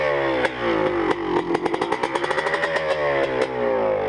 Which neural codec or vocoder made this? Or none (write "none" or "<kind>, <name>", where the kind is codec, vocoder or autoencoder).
none